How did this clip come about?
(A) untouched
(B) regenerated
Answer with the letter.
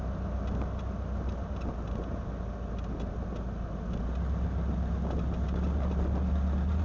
A